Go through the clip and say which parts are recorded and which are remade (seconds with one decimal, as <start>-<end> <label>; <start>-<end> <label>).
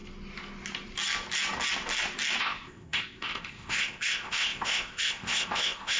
0.0-2.4 recorded; 2.4-6.0 remade